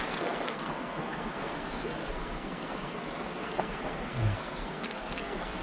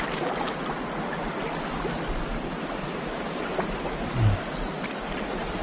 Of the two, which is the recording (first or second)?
second